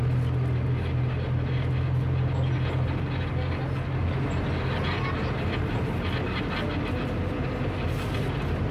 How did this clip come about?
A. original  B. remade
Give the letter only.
A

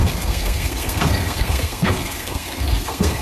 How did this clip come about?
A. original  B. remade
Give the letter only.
B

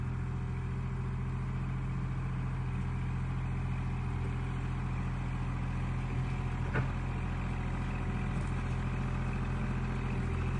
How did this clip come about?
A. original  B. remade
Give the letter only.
A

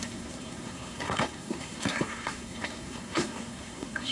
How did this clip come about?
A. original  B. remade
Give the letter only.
B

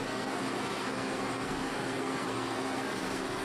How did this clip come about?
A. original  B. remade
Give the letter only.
B